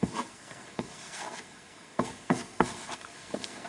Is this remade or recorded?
remade